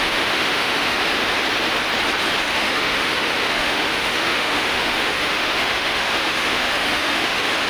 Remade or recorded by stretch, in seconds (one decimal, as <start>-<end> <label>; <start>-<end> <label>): 0.0-1.0 remade; 1.0-2.4 recorded; 2.4-7.7 remade